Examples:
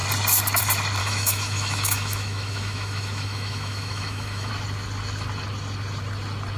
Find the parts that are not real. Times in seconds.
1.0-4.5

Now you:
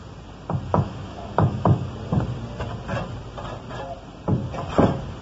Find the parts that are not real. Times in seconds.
0.7-1.9